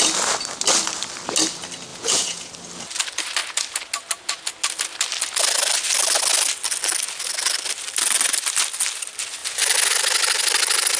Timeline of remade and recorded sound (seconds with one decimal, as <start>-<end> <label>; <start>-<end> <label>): 0.0-1.9 recorded; 1.9-2.5 remade; 2.5-11.0 recorded